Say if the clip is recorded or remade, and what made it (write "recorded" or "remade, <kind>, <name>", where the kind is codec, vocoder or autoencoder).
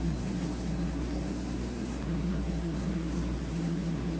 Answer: remade, codec, SNAC